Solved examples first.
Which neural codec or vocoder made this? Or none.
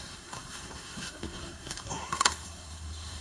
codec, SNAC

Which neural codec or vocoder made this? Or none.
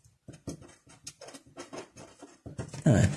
none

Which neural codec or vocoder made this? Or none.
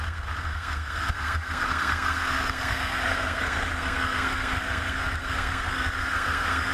codec, SNAC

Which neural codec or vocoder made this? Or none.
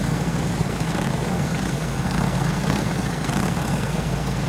codec, SNAC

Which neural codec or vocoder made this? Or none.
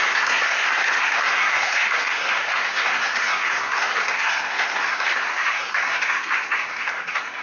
codec, SNAC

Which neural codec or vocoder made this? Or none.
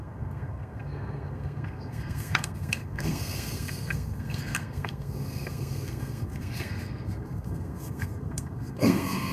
codec, SNAC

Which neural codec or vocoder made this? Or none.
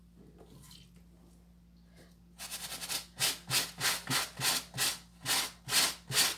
none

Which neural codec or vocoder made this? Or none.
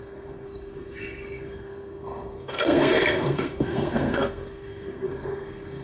codec, SNAC